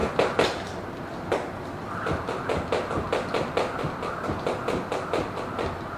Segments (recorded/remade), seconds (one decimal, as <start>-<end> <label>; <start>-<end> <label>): 0.0-6.0 recorded